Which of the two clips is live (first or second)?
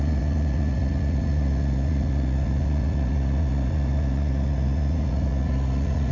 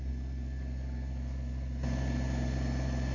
second